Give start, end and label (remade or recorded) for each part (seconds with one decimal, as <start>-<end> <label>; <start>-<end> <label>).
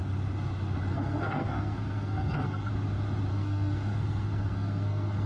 0.0-0.9 recorded; 0.9-2.7 remade; 2.7-3.3 recorded; 3.3-5.3 remade